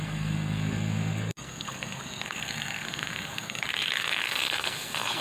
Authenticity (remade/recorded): remade